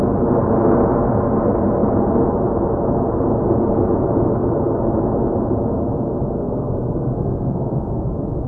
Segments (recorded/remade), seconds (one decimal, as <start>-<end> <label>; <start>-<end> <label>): 0.0-6.4 recorded; 6.4-8.1 remade; 8.1-8.5 recorded